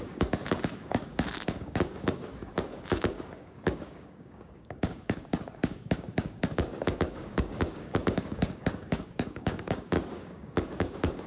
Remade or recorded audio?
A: remade